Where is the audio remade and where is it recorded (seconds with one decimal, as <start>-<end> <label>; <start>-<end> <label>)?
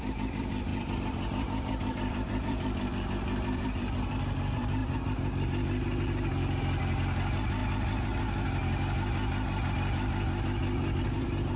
0.0-7.6 remade; 7.6-9.7 recorded; 9.7-11.6 remade